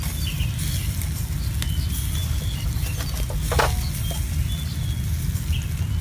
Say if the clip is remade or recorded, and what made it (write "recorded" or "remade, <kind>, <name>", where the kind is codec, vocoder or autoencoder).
recorded